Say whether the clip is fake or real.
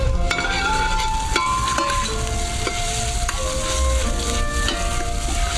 real